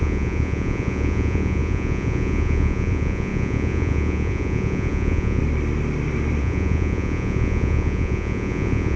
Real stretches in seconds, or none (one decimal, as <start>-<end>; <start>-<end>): 5.4-6.4